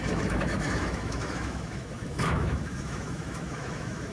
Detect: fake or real fake